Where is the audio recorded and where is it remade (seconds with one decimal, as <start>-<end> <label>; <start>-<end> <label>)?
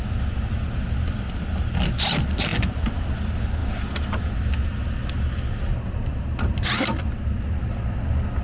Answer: 0.0-8.4 recorded